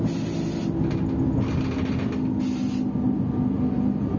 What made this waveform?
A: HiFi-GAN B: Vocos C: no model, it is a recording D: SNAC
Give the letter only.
C